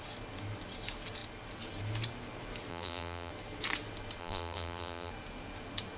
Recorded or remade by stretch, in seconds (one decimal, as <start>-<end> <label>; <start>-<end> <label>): 0.0-2.7 recorded; 2.7-3.3 remade; 3.3-4.2 recorded; 4.2-5.1 remade; 5.1-6.0 recorded